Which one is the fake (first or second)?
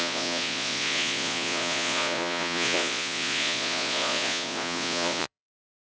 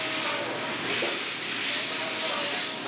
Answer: first